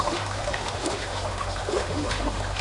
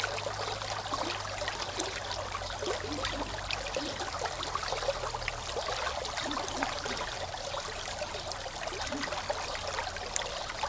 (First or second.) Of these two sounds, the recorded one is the second